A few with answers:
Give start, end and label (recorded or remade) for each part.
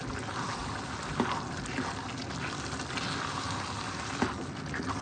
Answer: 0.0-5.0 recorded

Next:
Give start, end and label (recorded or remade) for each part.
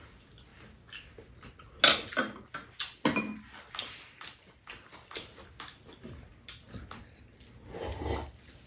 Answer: 0.0-4.9 recorded; 4.9-6.3 remade; 6.3-8.7 recorded